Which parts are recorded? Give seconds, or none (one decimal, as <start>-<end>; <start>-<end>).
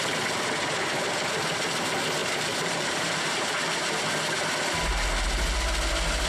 0.0-2.2; 4.1-6.3